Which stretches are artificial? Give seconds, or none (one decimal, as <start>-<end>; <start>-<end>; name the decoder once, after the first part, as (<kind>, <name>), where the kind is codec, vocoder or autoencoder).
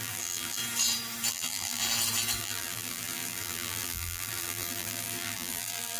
0.0-0.6 (vocoder, BigVGAN v2); 1.3-1.8; 2.4-6.0